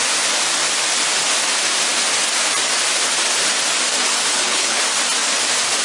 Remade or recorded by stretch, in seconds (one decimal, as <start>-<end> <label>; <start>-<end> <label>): 0.0-4.3 recorded; 4.3-4.8 remade; 4.8-5.8 recorded